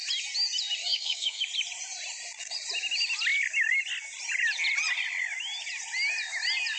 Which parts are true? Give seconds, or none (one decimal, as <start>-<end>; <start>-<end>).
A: 0.0-0.8; 1.4-6.8